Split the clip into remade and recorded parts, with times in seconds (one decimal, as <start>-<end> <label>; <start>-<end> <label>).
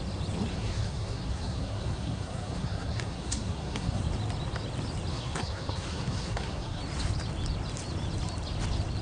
0.0-0.5 recorded; 0.5-4.0 remade; 4.0-5.1 recorded; 5.1-6.8 remade; 6.8-9.0 recorded